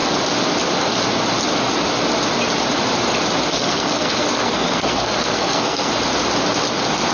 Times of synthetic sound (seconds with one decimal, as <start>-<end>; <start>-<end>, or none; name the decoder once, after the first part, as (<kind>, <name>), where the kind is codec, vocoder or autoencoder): 3.5-5.9 (codec, SNAC)